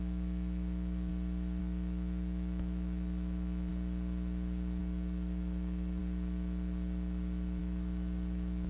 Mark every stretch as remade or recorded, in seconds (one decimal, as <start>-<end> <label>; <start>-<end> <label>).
0.0-1.1 remade; 1.1-1.6 recorded; 1.6-3.7 remade; 3.7-4.8 recorded; 4.8-6.0 remade; 6.0-7.6 recorded; 7.6-8.7 remade